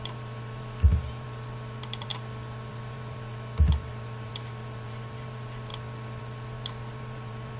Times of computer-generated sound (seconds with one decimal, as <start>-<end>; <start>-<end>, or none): 0.0-2.1; 2.7-5.7; 6.2-7.6